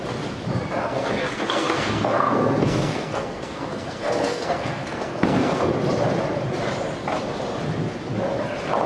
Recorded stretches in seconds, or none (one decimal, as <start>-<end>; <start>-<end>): 0.0-0.8; 5.7-8.9